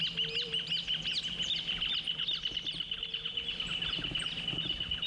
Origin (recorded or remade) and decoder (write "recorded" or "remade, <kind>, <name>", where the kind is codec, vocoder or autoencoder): recorded